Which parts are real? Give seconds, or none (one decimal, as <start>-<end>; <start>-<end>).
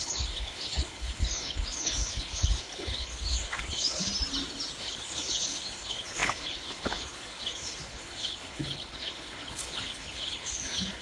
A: 4.1-4.8